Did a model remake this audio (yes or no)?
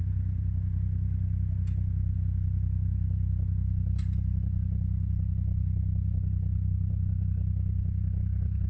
yes